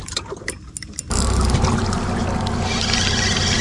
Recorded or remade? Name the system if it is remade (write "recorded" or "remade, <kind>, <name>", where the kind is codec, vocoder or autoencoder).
recorded